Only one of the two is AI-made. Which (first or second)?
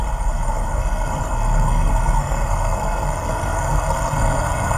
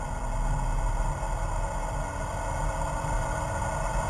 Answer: first